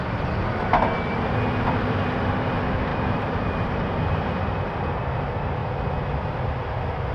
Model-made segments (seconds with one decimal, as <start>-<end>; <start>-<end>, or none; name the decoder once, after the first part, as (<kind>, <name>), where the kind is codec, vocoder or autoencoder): 2.9-3.8 (vocoder, BigVGAN v2)